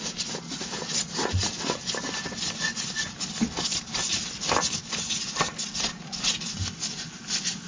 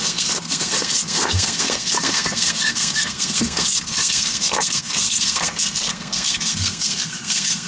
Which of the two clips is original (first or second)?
first